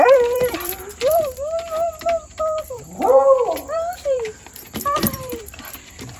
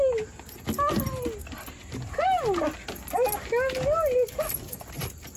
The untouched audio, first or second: second